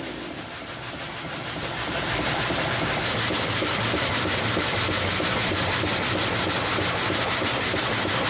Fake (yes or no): no